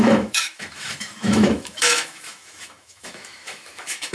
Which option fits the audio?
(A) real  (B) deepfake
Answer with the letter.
B